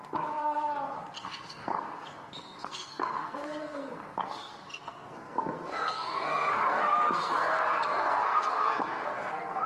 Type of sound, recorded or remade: remade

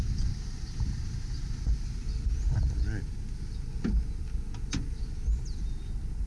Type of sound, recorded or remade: recorded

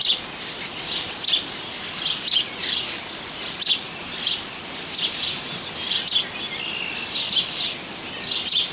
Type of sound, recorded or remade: recorded